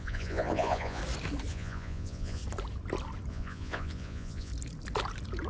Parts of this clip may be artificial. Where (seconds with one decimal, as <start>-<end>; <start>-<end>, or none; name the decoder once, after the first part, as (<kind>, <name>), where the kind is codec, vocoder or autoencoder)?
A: 0.0-1.0 (vocoder, Vocos); 1.5-2.4; 3.3-4.5